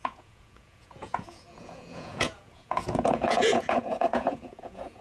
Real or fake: fake